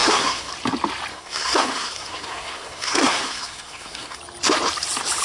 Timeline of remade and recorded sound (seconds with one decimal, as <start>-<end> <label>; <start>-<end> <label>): 0.0-0.5 remade; 0.5-1.1 recorded; 1.1-4.2 remade; 4.2-5.2 recorded

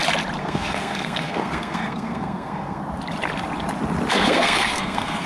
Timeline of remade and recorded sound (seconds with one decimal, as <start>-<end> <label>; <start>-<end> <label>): 0.0-0.4 recorded; 0.4-2.8 remade; 2.8-4.1 recorded; 4.1-5.3 remade

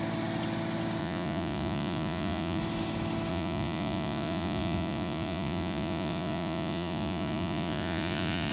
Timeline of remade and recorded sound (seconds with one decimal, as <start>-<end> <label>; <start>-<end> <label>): 0.0-1.0 recorded; 1.0-2.6 remade; 2.6-3.3 recorded; 3.3-8.5 remade

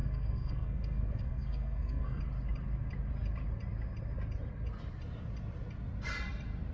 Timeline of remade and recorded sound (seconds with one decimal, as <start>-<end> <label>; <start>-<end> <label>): 0.0-2.2 remade; 2.2-6.7 recorded

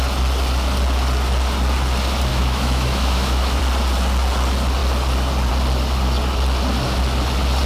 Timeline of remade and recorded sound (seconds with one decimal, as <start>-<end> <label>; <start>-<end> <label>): 0.0-2.3 recorded; 2.3-3.6 remade; 3.6-7.7 recorded